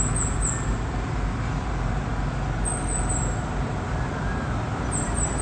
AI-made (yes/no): no